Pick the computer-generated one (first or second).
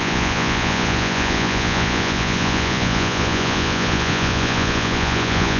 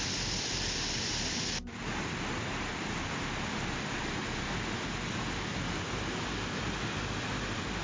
first